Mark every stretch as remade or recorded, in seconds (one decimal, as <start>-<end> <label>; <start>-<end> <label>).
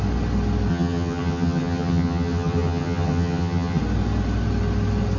0.0-0.7 recorded; 0.7-3.8 remade; 3.8-5.2 recorded